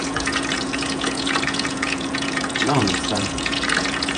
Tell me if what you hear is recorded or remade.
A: remade